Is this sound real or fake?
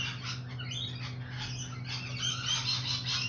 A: real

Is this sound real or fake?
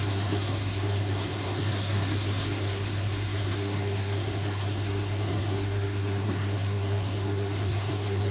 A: fake